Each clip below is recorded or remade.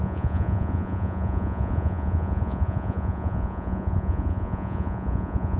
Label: remade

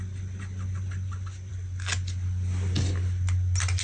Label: recorded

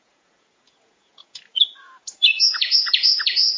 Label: remade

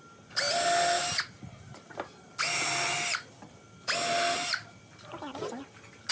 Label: recorded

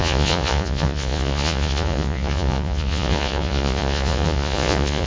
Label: remade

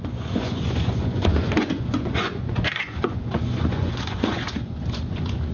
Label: remade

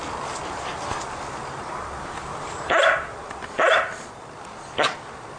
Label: recorded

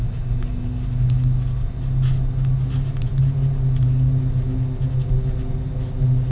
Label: recorded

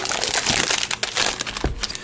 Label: recorded